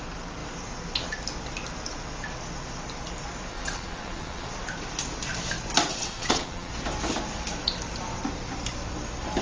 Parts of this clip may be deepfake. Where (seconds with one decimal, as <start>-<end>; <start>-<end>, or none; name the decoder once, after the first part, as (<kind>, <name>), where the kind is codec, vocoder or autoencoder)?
3.5-4.5 (vocoder, WaveNeXt); 5.9-6.7